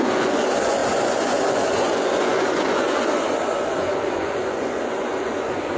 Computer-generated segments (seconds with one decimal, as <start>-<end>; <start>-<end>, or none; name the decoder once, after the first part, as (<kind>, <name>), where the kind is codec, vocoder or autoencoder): 0.0-5.8 (vocoder, Vocos)